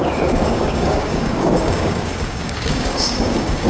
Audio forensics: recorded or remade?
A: remade